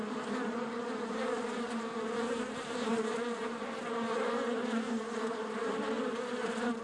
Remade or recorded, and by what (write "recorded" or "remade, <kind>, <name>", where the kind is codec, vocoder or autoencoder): remade, vocoder, BigVGAN v2